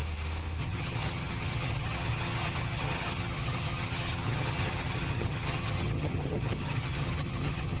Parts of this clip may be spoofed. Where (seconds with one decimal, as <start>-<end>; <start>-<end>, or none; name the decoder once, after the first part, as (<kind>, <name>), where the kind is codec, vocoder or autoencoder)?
0.6-7.8 (vocoder, HiFi-GAN)